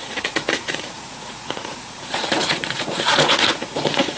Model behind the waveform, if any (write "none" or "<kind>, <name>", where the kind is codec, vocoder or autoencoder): vocoder, Vocos